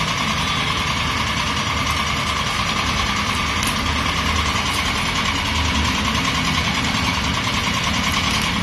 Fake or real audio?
real